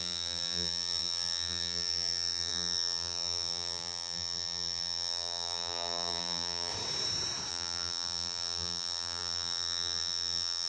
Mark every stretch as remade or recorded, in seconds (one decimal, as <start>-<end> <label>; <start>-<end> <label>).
0.0-6.7 remade; 6.7-7.5 recorded; 7.5-10.7 remade

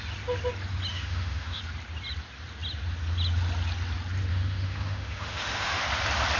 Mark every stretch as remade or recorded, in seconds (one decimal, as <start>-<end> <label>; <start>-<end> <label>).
0.0-0.9 recorded; 0.9-1.6 remade; 1.6-4.3 recorded; 4.3-5.8 remade; 5.8-6.4 recorded

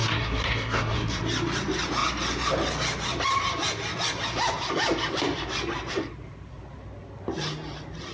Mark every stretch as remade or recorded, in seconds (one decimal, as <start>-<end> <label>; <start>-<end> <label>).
0.0-1.2 remade; 1.2-8.1 recorded

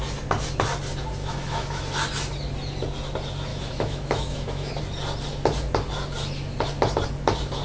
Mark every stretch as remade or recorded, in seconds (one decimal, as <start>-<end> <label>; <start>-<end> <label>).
0.0-1.2 recorded; 1.2-1.8 remade; 1.8-3.5 recorded; 3.5-4.8 remade; 4.8-7.6 recorded

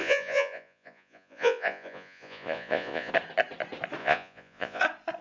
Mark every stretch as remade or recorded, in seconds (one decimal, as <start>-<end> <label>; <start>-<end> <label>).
0.0-3.1 remade; 3.1-4.0 recorded; 4.0-4.8 remade; 4.8-5.2 recorded